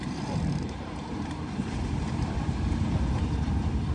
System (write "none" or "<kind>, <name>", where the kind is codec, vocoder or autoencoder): vocoder, BigVGAN v2